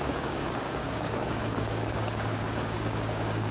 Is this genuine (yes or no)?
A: no